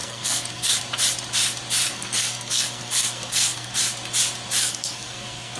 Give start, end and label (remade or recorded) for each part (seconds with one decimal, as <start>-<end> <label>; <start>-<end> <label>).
0.0-0.8 remade; 0.8-1.9 recorded; 1.9-3.8 remade; 3.8-4.6 recorded; 4.6-5.6 remade